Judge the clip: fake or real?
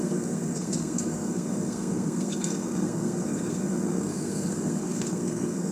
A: fake